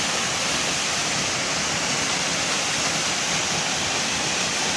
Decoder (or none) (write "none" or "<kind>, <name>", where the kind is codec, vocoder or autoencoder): none